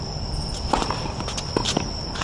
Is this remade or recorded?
recorded